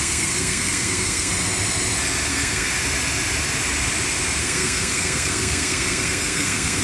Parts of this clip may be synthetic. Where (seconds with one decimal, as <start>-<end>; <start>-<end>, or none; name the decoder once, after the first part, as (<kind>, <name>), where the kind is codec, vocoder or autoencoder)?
0.0-1.3 (codec, SNAC); 2.3-2.7; 4.4-6.8